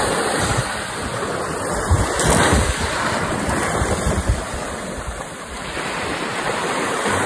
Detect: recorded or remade remade